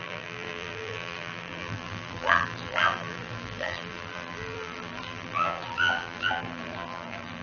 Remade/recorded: remade